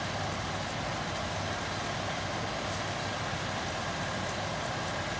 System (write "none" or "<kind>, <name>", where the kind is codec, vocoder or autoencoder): none